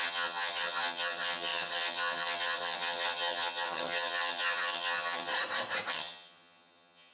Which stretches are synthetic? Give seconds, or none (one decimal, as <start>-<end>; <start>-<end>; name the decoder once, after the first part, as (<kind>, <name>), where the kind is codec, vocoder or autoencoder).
0.0-5.3 (vocoder, HiFi-GAN); 5.9-7.1